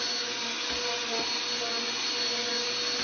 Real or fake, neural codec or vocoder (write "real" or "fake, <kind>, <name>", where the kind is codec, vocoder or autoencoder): real